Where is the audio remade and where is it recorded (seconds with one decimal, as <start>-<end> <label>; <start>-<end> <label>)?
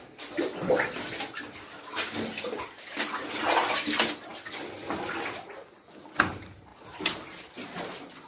0.0-4.3 recorded; 4.3-5.1 remade; 5.1-8.3 recorded